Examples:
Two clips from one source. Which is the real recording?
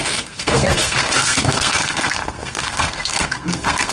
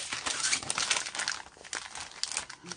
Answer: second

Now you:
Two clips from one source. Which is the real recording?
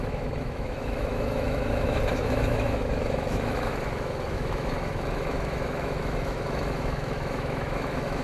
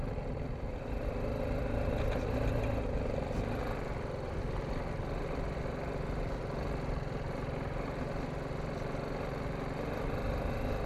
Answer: second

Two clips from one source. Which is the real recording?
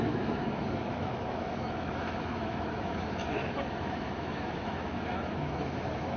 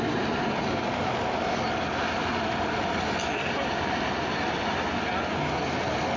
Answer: second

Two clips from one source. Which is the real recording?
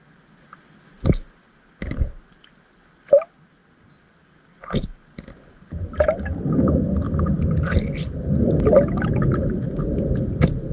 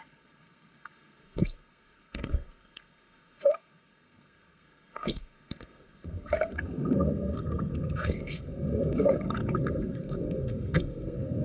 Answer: first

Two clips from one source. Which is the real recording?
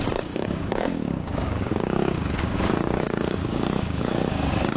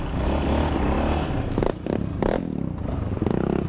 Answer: second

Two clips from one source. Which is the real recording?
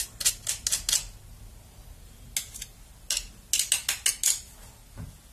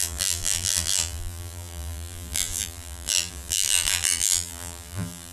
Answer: first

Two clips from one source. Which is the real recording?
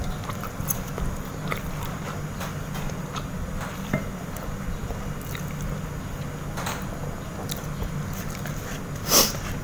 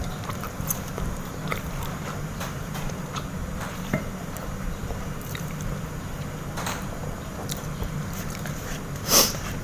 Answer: first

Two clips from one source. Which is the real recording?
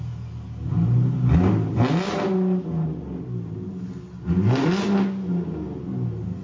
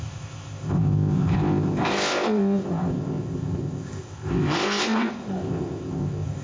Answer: first